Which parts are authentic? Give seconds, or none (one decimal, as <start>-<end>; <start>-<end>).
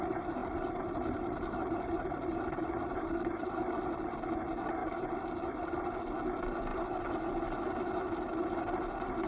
0.0-0.4; 3.6-4.8; 6.0-9.3